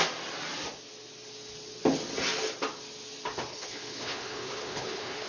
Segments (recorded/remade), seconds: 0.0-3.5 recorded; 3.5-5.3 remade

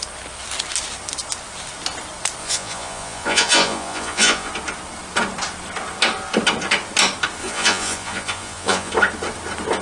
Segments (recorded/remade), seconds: 0.0-2.4 recorded; 2.4-4.5 remade; 4.5-7.4 recorded; 7.4-8.9 remade; 8.9-9.8 recorded

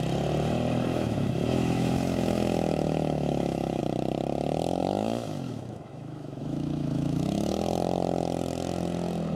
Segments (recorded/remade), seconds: 0.0-0.9 recorded; 0.9-3.8 remade; 3.8-4.8 recorded; 4.8-7.5 remade; 7.5-9.4 recorded

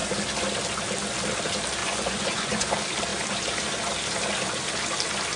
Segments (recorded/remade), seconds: 0.0-1.8 recorded; 1.8-2.7 remade; 2.7-5.4 recorded

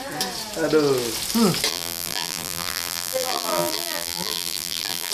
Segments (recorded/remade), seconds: 0.0-1.7 recorded; 1.7-5.1 remade